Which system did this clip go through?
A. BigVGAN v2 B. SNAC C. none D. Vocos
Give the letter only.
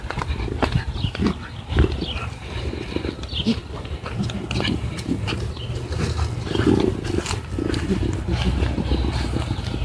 C